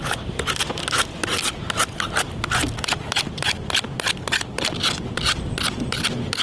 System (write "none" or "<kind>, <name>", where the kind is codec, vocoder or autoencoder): none